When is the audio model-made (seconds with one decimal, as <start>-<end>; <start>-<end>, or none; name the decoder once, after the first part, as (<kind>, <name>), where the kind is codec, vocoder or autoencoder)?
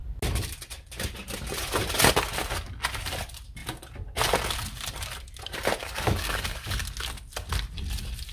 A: 5.8-6.8 (codec, DAC)